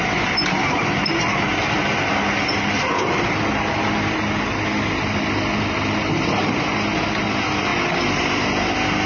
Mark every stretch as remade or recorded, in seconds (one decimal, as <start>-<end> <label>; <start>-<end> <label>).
0.0-9.1 recorded